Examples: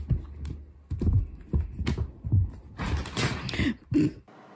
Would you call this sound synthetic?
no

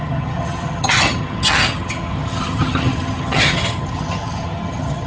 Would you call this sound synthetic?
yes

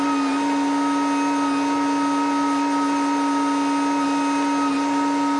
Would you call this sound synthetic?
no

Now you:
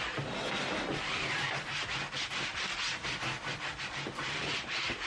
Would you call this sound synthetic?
no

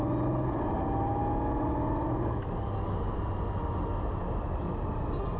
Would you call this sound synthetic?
no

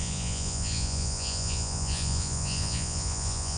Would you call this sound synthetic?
yes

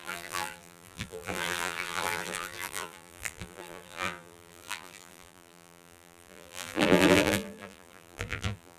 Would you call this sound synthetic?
yes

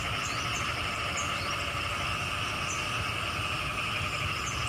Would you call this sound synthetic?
no